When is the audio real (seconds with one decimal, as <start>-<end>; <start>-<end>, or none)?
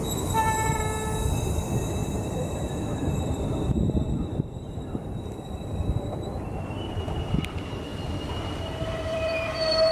0.4-1.5; 7.9-8.6